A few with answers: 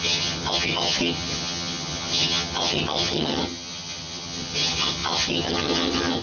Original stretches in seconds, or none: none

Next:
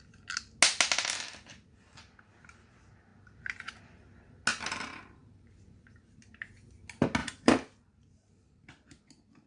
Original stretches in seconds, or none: 0.0-5.2; 6.2-7.2; 8.7-9.5

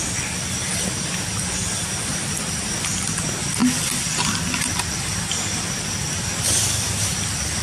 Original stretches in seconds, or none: 0.0-0.6; 2.2-7.6

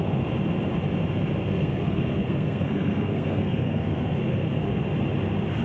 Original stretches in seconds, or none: 0.0-1.4; 4.8-5.6

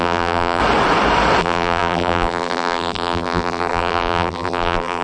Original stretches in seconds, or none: 0.6-1.4

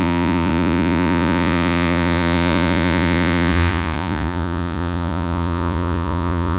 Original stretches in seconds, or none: none

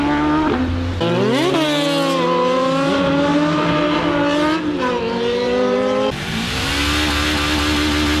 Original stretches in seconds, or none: 0.0-3.3; 6.7-8.2